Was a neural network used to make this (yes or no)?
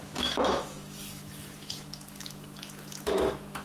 yes